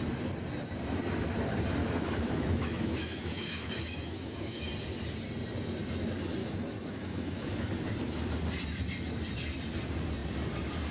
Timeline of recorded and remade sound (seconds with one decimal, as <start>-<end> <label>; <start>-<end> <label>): 0.0-1.8 recorded; 1.8-4.7 remade; 4.7-6.4 recorded; 6.4-7.7 remade; 7.7-10.9 recorded